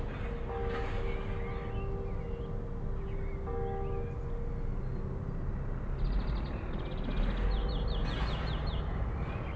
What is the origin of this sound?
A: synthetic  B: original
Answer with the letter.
B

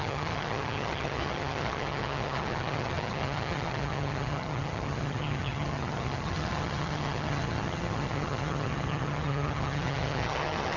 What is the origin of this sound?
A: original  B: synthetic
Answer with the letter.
B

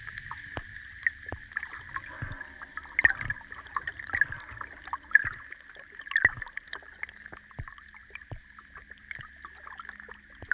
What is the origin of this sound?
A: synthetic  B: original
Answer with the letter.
B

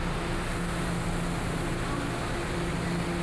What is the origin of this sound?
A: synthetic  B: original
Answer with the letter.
B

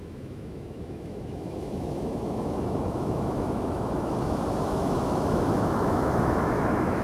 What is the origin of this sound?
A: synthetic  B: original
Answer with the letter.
A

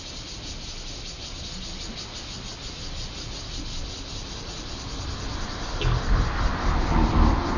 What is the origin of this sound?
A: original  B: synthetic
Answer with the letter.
A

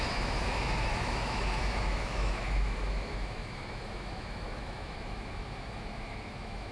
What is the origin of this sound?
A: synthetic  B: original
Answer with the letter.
A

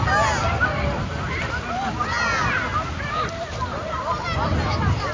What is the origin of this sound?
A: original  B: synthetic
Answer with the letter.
A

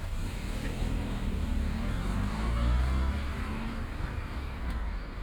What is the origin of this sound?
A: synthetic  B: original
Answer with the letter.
A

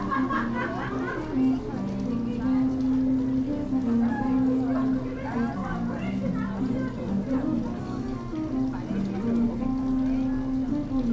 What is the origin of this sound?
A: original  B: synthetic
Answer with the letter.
A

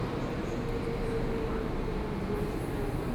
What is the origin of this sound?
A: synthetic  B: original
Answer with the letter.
B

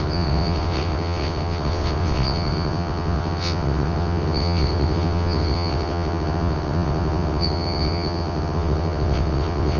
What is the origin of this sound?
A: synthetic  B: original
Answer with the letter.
A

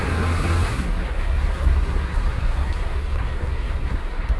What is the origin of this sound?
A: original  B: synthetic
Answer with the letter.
B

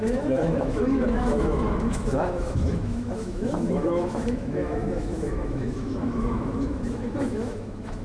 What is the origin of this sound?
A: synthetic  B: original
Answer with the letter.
A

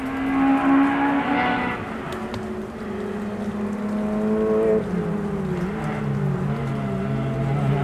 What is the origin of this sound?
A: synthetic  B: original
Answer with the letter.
B